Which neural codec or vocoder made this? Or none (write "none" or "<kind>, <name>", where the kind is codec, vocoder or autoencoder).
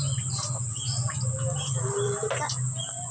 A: none